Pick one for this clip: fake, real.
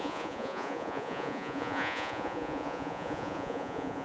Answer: fake